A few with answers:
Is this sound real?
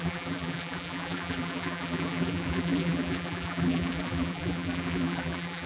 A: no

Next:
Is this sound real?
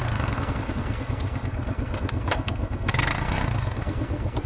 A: no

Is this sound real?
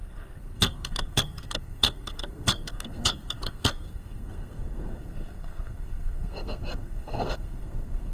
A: no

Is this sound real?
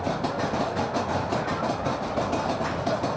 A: yes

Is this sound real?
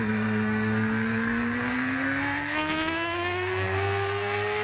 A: no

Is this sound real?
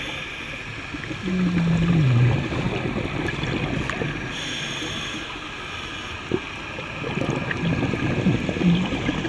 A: yes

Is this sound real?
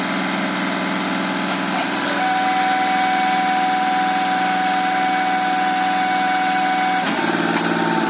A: yes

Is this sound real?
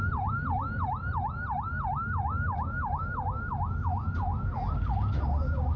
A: yes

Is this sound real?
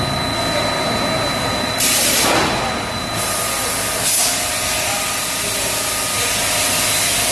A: yes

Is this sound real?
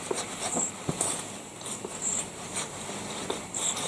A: no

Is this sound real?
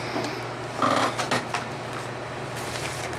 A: yes